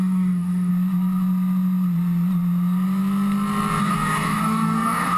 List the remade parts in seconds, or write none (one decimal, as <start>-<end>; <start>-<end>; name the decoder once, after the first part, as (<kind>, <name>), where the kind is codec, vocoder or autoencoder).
0.0-0.7 (codec, DAC); 3.8-5.2

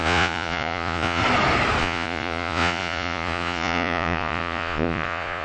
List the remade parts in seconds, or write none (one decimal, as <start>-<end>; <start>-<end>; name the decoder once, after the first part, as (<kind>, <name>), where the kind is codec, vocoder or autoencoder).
0.0-1.2 (vocoder, Vocos); 1.8-5.4

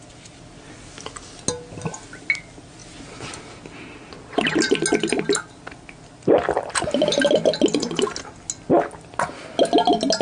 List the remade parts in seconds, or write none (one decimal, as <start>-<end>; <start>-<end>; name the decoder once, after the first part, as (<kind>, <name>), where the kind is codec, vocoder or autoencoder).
none

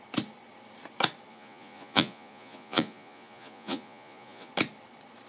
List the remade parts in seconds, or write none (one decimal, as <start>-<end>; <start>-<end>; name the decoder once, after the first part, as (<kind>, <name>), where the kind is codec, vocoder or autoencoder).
1.3-4.5 (vocoder, Vocos)